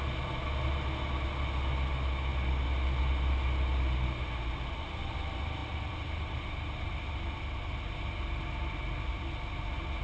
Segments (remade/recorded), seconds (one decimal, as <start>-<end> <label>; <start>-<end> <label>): 0.0-5.6 recorded; 5.6-6.9 remade; 6.9-10.0 recorded